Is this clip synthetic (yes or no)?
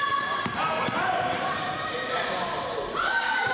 yes